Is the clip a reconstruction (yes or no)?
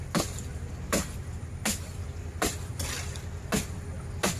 no